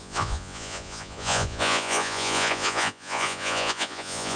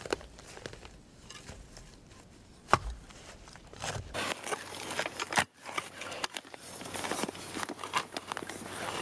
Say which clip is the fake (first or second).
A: first